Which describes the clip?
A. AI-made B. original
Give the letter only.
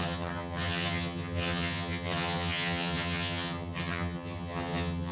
A